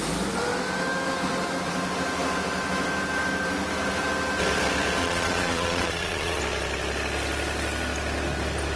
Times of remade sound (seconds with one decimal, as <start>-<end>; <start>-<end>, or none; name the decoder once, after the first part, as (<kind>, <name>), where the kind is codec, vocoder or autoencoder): 5.0-6.4 (vocoder, Vocos)